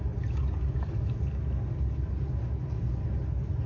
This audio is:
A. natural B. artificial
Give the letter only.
A